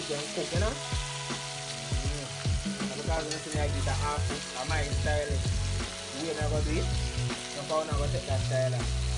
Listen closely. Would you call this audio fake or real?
real